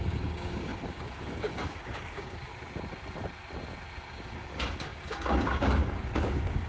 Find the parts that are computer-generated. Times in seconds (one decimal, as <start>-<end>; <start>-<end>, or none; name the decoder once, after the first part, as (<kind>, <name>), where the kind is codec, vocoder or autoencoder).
0.0-2.5 (codec, DAC); 4.1-6.7